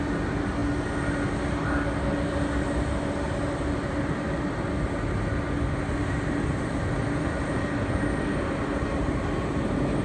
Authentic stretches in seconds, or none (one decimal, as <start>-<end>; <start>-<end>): 0.0-10.0